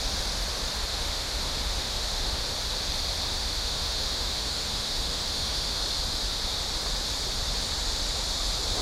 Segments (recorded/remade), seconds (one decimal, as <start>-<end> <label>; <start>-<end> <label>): 0.0-0.9 recorded; 0.9-2.4 remade; 2.4-3.3 recorded; 3.3-5.8 remade; 5.8-8.8 recorded